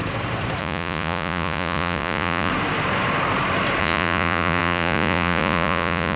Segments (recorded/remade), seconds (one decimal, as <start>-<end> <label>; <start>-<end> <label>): 0.0-0.6 recorded; 0.6-2.5 remade; 2.5-3.8 recorded; 3.8-6.2 remade